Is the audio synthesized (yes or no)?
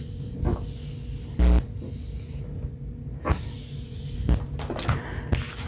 no